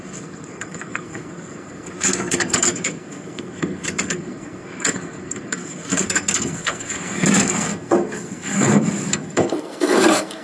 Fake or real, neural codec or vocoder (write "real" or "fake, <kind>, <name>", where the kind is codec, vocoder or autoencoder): fake, codec, SNAC